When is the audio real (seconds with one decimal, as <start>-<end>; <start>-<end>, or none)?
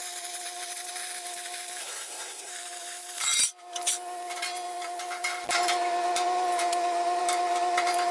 0.0-1.8; 2.5-8.1